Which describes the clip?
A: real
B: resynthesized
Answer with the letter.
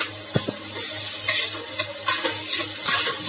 A